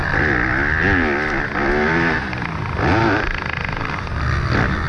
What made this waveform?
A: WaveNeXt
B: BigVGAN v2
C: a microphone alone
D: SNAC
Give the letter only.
C